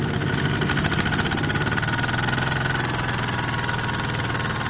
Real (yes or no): yes